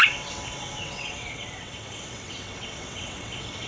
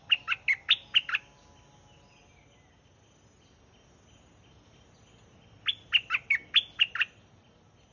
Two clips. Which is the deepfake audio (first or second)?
first